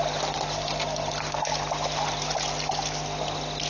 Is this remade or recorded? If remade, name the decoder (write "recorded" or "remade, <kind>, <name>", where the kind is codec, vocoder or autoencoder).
recorded